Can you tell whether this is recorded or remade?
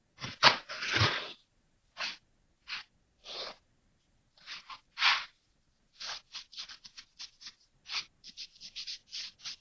remade